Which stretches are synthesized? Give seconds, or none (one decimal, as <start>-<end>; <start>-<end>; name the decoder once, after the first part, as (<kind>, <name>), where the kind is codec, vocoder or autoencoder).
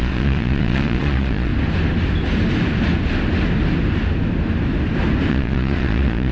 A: 0.0-1.5 (vocoder, Vocos); 5.3-6.3